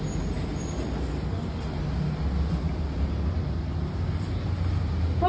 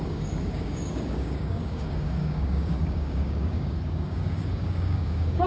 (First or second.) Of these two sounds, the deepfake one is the second